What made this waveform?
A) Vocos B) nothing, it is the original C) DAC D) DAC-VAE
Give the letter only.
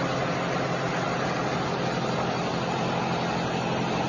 B